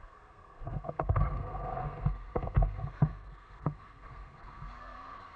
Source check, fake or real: fake